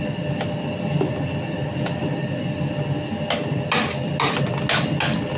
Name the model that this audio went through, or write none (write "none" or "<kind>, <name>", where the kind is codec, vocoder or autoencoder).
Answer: none